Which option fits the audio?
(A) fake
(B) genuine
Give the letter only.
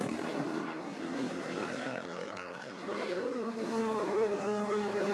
A